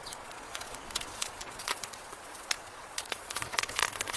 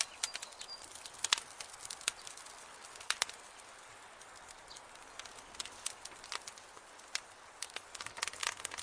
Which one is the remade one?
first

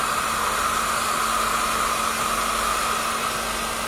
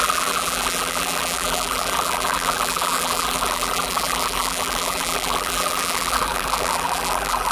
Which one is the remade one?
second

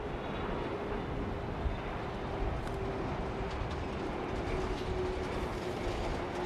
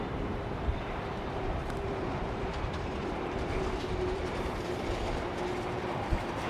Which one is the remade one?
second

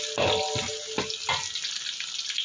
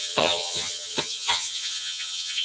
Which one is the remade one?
second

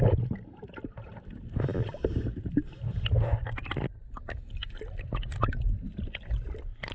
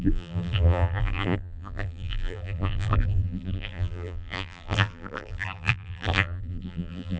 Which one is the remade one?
second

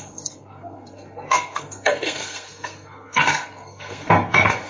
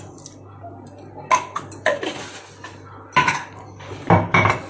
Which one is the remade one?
first